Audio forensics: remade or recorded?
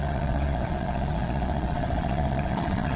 remade